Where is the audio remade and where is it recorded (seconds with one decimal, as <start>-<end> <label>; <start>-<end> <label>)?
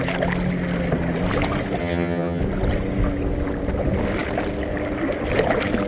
0.0-1.8 recorded; 1.8-2.4 remade; 2.4-5.9 recorded